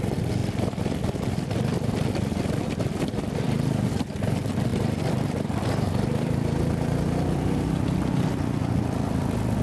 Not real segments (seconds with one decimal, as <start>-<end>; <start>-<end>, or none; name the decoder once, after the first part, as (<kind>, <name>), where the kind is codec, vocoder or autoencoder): 0.0-9.6 (vocoder, BigVGAN v2)